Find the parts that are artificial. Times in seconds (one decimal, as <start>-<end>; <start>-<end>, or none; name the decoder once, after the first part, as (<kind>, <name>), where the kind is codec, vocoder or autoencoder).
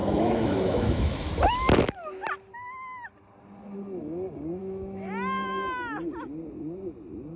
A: 0.0-1.3 (autoencoder, DAC-VAE); 4.6-5.1